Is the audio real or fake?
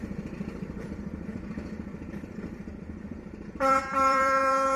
fake